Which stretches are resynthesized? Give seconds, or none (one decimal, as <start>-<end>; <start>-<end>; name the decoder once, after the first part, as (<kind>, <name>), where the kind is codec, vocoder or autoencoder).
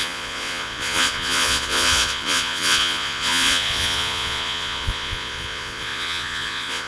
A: 0.0-6.9 (vocoder, Vocos)